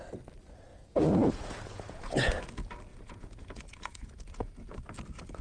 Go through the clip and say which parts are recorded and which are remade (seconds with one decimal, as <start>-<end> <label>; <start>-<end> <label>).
0.0-0.7 recorded; 0.7-2.4 remade; 2.4-2.9 recorded; 2.9-4.8 remade; 4.8-5.4 recorded